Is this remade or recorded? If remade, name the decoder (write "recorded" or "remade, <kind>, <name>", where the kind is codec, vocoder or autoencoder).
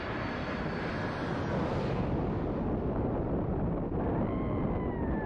recorded